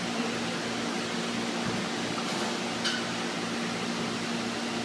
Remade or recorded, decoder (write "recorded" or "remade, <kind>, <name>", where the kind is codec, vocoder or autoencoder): recorded